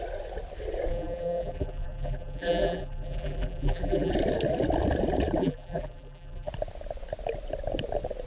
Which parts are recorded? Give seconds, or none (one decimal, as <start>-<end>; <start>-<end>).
0.0-0.9; 4.1-5.4; 6.5-8.3